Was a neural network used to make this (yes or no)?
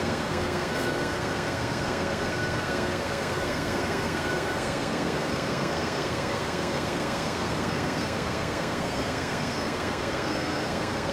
yes